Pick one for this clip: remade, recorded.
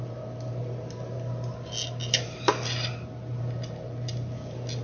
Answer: recorded